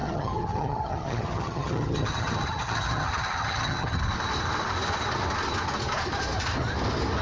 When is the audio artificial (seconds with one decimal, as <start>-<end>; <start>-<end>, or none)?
0.0-4.0